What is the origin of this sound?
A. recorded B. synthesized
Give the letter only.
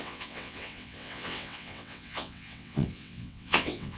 B